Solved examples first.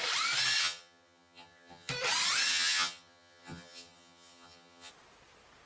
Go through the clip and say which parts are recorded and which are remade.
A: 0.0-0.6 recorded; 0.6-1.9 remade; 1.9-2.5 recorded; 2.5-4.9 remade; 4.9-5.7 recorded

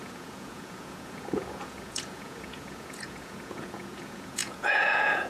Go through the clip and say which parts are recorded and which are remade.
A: 0.0-5.3 remade

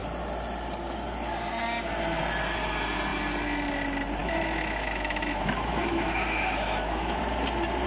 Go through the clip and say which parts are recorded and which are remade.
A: 0.0-4.2 recorded; 4.2-7.2 remade; 7.2-7.9 recorded

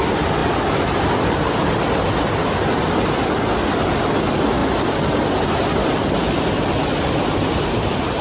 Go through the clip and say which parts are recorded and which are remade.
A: 0.0-8.2 recorded

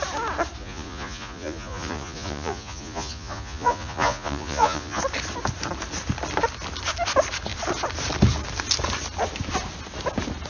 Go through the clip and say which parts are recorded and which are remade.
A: 0.0-0.6 recorded; 0.6-5.0 remade; 5.0-10.5 recorded

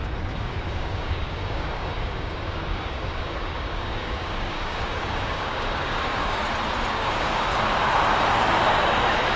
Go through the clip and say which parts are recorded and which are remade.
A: 0.0-6.4 remade; 6.4-6.9 recorded; 6.9-7.5 remade; 7.5-9.4 recorded

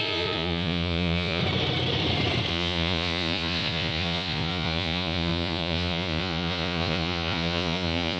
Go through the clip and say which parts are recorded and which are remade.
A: 0.0-1.4 remade; 1.4-2.5 recorded; 2.5-8.2 remade